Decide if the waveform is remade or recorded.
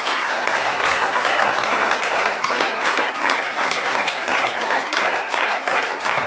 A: remade